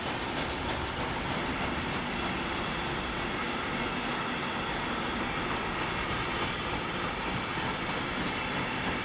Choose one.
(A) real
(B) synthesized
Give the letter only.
A